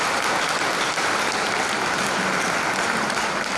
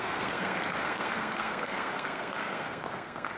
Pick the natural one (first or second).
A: first